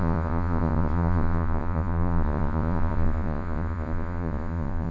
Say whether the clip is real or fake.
fake